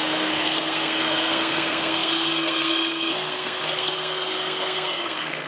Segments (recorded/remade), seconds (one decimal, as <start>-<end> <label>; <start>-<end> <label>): 0.0-5.5 remade